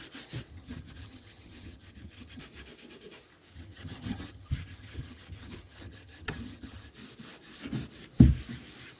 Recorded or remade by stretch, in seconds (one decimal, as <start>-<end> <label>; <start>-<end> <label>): 0.0-0.5 recorded; 0.5-2.4 remade; 2.4-3.5 recorded; 3.5-6.9 remade; 6.9-9.0 recorded